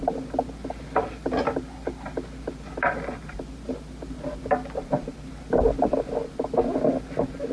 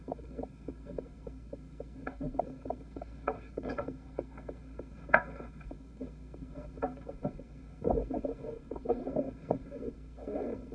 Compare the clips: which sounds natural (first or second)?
first